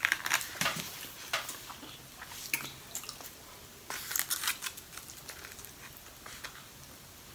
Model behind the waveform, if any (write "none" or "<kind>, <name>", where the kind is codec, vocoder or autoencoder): none